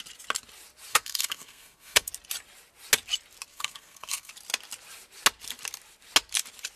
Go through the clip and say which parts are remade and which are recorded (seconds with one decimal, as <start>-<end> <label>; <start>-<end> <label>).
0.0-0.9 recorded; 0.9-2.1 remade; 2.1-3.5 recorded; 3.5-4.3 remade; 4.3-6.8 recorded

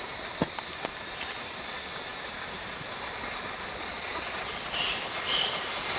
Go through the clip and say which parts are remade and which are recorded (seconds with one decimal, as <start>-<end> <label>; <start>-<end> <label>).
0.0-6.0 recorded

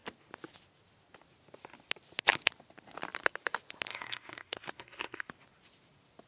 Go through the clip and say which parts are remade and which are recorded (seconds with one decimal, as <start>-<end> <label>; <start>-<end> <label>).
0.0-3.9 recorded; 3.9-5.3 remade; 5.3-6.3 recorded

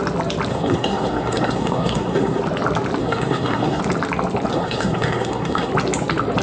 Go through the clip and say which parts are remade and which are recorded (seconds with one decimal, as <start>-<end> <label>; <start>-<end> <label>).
0.0-0.5 recorded; 0.5-2.4 remade; 2.4-3.0 recorded; 3.0-3.8 remade; 3.8-4.5 recorded; 4.5-5.7 remade; 5.7-6.4 recorded

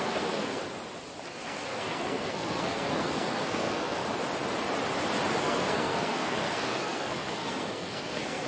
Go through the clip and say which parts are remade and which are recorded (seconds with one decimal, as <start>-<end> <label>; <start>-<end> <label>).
0.0-0.6 remade; 0.6-1.3 recorded; 1.3-4.0 remade; 4.0-5.4 recorded; 5.4-8.5 remade

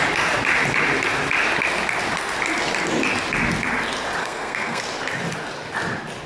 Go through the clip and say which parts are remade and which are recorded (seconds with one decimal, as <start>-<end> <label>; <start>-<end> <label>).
0.0-4.2 recorded; 4.2-4.8 remade; 4.8-6.3 recorded